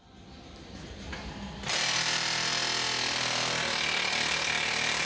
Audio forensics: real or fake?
real